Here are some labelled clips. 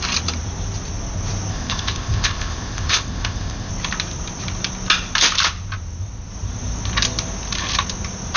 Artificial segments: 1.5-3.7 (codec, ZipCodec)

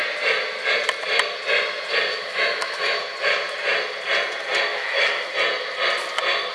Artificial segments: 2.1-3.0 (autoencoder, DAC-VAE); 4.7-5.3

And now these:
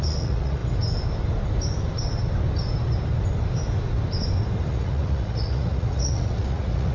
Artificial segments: 0.0-0.6 (vocoder, Vocos); 4.7-6.9

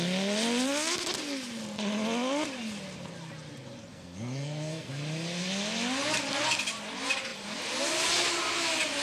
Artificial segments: 3.9-4.9 (codec, SNAC)

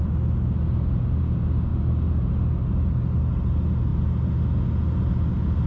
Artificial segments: none

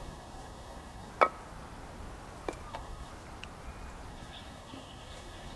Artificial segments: 0.0-1.1 (codec, SNAC); 2.7-3.1; 4.1-5.6

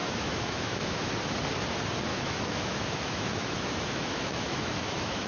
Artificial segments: 0.0-1.1 (autoencoder, DAC-VAE); 2.1-5.3

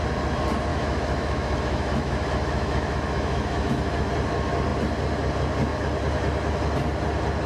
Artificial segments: 0.7-4.1 (autoencoder, DAC-VAE)